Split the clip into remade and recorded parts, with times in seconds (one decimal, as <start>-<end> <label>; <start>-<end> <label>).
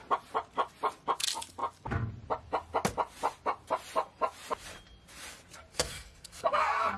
0.0-5.7 recorded; 5.7-7.0 remade